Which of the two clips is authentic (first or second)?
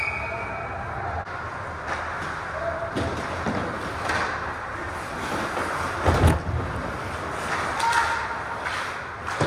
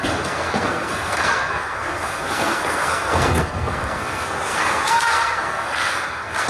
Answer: first